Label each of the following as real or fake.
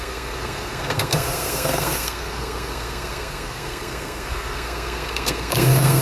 fake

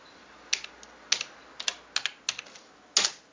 real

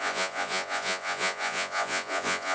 fake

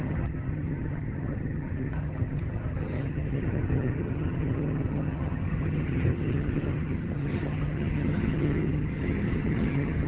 fake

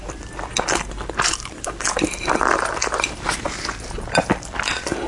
real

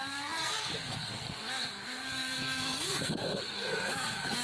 fake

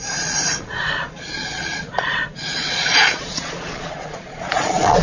fake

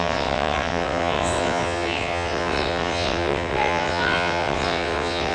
fake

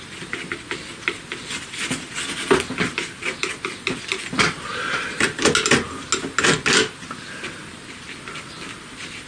real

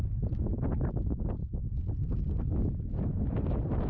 real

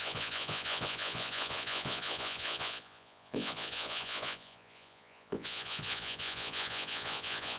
fake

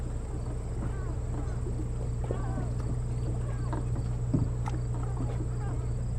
real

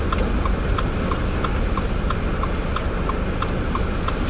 real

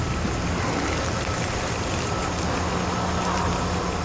real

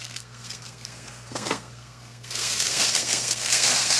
fake